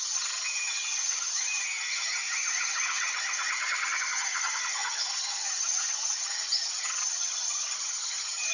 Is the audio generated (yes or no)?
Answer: yes